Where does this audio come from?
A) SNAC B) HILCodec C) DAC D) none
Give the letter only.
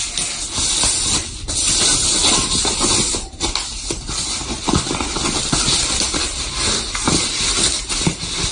D